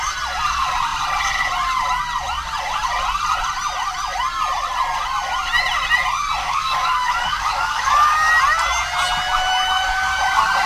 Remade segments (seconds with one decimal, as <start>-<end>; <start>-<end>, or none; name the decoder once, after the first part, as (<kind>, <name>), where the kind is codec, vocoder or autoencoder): 6.4-8.3 (codec, DAC); 9.5-10.2